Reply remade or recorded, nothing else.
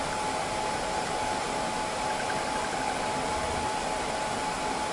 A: recorded